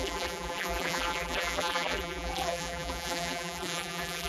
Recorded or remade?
remade